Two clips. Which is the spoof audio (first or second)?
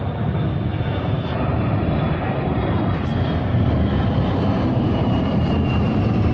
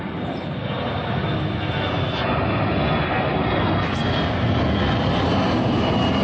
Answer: first